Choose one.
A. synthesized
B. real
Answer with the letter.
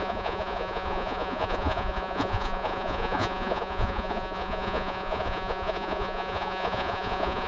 A